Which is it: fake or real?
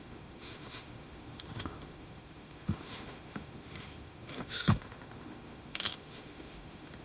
fake